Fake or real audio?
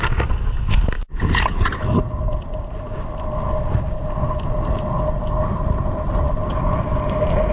real